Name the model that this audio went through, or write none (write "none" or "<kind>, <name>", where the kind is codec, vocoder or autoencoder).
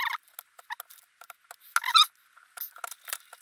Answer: none